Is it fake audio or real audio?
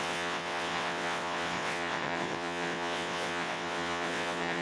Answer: fake